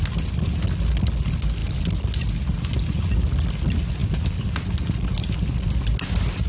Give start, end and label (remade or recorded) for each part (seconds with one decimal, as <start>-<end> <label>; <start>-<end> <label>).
0.0-6.5 recorded